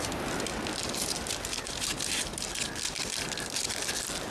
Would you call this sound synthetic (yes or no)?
no